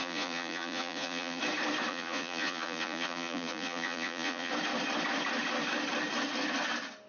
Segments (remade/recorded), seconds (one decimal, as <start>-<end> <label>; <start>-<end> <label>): 0.0-1.4 remade; 1.4-1.9 recorded; 1.9-4.5 remade; 4.5-7.1 recorded